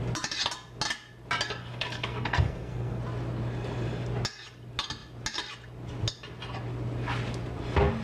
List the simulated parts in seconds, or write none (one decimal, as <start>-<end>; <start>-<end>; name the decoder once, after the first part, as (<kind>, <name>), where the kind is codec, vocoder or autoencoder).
1.6-3.0 (codec, SNAC)